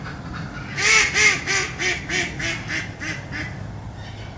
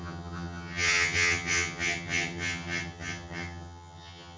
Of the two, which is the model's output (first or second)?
second